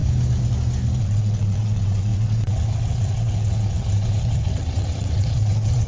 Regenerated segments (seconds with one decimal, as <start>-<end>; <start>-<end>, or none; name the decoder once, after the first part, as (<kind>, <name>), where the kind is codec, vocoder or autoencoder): 1.0-5.9 (vocoder, WaveNeXt)